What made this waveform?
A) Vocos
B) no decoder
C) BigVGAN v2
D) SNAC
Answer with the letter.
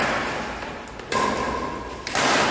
B